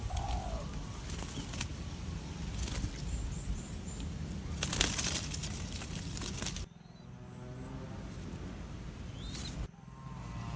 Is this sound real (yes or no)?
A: yes